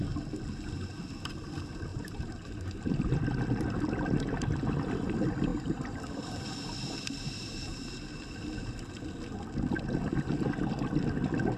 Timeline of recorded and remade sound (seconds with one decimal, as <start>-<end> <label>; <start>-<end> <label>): 0.0-1.9 recorded; 1.9-3.1 remade; 3.1-5.5 recorded; 5.5-6.0 remade; 6.0-11.6 recorded